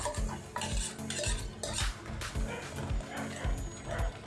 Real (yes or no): yes